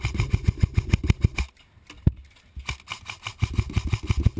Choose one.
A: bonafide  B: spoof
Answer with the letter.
A